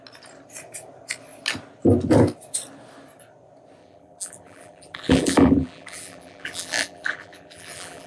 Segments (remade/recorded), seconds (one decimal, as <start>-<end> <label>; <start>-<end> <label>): 0.0-3.8 recorded; 3.8-8.1 remade